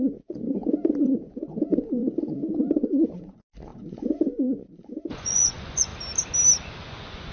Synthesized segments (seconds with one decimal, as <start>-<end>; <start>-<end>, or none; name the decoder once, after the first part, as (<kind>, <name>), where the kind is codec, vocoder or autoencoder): 0.0-2.0 (vocoder, Vocos); 2.5-5.9; 6.6-7.3